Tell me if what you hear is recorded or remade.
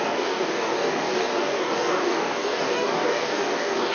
remade